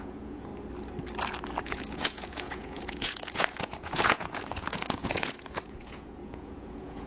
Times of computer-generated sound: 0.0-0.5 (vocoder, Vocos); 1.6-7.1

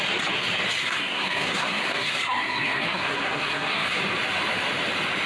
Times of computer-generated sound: 0.8-4.0 (codec, SNAC)

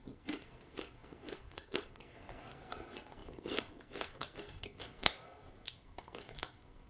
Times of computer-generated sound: 0.0-6.9 (codec, SNAC)

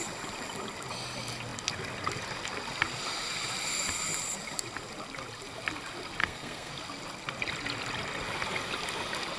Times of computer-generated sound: 6.2-6.7 (codec, SNAC)

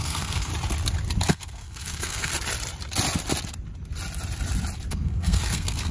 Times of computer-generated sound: 0.0-0.5 (codec, SNAC); 1.3-2.3; 4.9-5.9

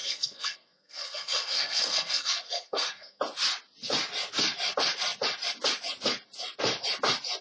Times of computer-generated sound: 0.0-3.2 (codec, SNAC)

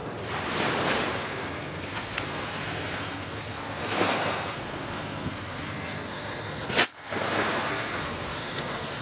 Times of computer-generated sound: 1.1-9.0 (codec, SNAC)